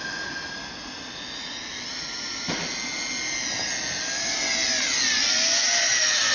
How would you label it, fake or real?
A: real